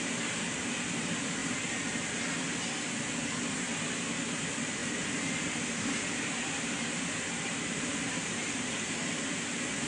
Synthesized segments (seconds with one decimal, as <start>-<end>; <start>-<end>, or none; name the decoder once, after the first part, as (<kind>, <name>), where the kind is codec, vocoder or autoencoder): 0.0-1.4 (vocoder, BigVGAN v2); 3.3-9.9